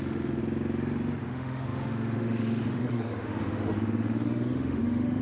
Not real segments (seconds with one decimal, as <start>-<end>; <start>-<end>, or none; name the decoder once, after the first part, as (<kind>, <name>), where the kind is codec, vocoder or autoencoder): 0.0-0.4 (autoencoder, DAC-VAE); 1.2-5.2